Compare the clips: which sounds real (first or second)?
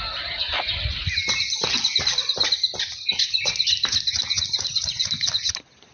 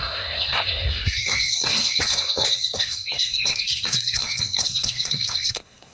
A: first